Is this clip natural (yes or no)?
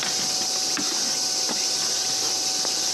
yes